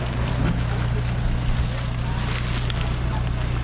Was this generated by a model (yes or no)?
no